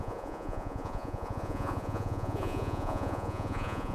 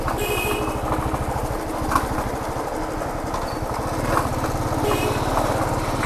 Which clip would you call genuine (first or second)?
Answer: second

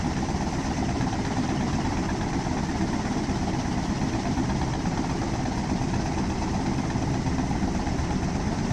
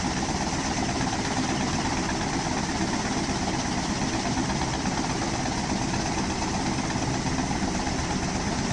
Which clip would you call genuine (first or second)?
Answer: second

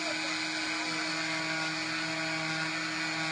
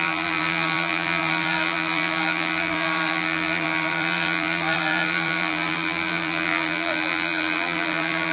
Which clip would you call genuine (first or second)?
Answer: first